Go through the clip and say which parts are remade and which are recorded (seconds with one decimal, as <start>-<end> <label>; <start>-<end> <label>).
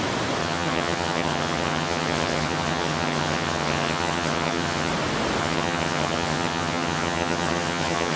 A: 0.0-0.4 recorded; 0.4-4.9 remade; 4.9-5.4 recorded; 5.4-8.2 remade